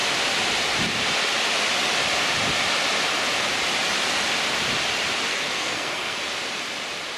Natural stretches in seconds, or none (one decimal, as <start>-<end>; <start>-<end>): 0.0-5.3; 6.2-7.2